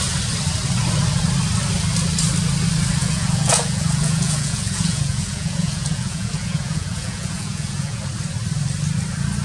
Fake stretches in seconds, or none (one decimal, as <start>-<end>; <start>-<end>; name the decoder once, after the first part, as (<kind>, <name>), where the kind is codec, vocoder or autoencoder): 3.0-8.0 (vocoder, Vocos)

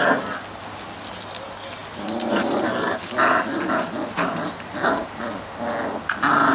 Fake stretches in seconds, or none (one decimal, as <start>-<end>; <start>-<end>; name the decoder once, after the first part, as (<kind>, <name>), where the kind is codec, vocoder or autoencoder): none

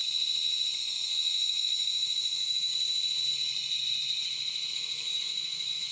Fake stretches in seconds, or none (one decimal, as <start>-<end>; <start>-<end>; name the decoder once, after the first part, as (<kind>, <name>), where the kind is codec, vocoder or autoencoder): 0.8-2.7 (autoencoder, DAC-VAE); 4.7-5.9

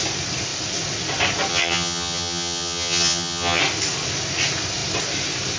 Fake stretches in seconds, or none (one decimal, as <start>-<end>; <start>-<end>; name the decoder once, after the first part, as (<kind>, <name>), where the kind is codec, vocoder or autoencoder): 1.5-3.6 (vocoder, HiFi-GAN)

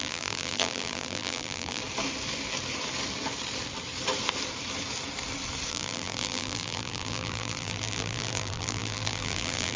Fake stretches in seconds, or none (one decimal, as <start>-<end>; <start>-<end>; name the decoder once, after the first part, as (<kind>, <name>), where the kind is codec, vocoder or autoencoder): 0.0-1.8 (vocoder, BigVGAN v2); 5.7-9.8

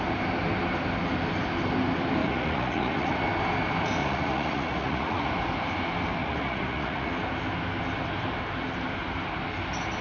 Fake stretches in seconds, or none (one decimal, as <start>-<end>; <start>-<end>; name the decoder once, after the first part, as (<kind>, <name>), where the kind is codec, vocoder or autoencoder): 2.2-3.2 (vocoder, Vocos); 4.0-5.3; 6.2-7.1